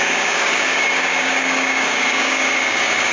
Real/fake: fake